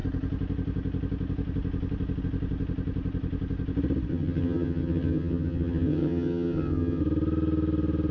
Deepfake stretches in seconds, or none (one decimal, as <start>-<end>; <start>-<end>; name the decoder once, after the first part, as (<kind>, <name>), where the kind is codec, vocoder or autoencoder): 4.1-7.0 (vocoder, HiFi-GAN)